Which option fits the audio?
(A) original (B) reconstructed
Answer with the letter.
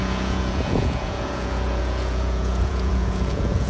B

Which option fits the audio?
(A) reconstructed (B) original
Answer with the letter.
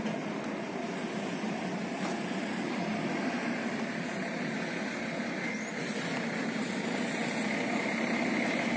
B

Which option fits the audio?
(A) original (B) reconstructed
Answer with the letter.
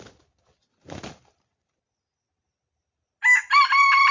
A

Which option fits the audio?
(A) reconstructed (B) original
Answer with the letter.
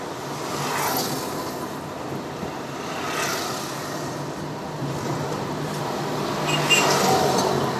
B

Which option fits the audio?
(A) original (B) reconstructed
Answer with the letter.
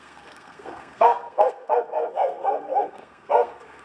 B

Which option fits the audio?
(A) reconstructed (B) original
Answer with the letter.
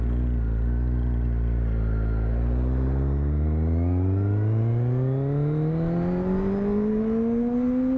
B